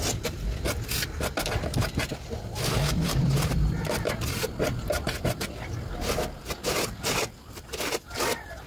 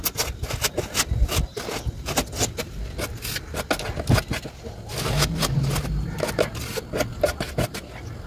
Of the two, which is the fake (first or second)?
first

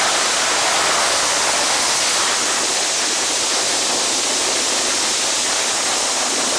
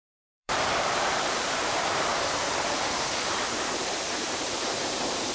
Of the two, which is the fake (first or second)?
second